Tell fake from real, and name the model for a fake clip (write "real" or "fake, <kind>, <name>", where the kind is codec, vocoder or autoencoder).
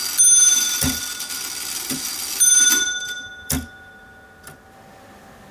real